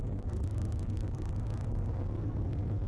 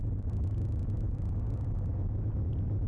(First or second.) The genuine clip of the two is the second